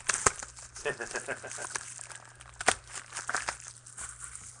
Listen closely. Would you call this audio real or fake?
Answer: fake